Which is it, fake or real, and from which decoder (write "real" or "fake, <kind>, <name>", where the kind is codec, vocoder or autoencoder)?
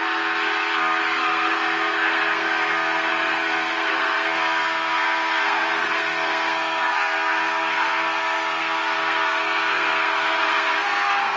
fake, codec, SNAC